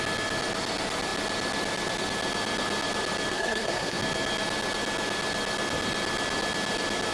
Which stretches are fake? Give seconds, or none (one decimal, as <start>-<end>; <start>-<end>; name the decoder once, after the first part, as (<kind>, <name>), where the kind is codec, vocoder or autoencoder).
3.3-4.0 (codec, SNAC)